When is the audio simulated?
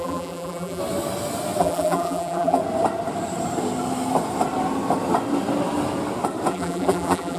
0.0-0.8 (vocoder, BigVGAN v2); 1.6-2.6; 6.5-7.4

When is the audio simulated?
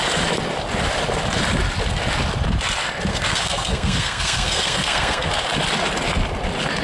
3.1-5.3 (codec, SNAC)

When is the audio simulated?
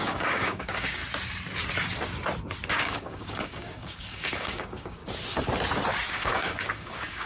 0.0-1.0 (codec, DAC); 2.7-5.0; 6.1-7.3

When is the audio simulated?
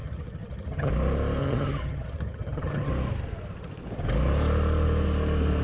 0.0-0.9 (vocoder, HiFi-GAN); 1.4-2.9